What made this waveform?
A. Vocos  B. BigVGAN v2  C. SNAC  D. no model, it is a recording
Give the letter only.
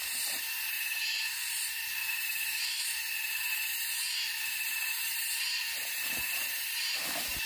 B